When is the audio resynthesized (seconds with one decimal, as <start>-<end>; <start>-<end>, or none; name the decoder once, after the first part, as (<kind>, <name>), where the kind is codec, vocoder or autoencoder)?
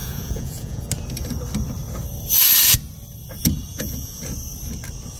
0.0-0.8 (vocoder, Vocos); 3.7-4.2